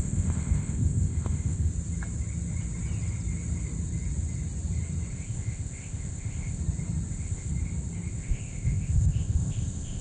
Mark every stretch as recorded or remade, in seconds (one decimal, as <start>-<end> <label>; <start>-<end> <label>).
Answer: 0.0-1.7 remade; 1.7-5.1 recorded; 5.1-6.6 remade; 6.6-7.1 recorded; 7.1-7.5 remade; 7.5-8.1 recorded; 8.1-10.0 remade